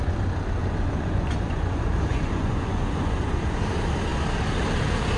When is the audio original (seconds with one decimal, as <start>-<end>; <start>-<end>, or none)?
0.0-0.6; 3.6-5.2